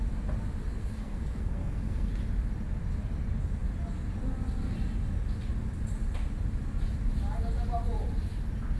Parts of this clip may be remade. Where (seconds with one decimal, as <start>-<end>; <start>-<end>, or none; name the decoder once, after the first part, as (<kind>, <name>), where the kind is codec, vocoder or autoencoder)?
0.7-2.1 (codec, SNAC)